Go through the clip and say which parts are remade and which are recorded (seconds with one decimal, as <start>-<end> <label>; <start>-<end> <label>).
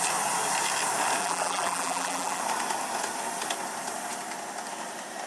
0.0-1.2 recorded; 1.2-2.4 remade; 2.4-5.3 recorded